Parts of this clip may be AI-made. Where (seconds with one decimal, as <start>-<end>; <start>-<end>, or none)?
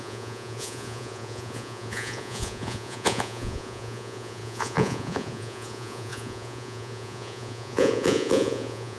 0.0-9.0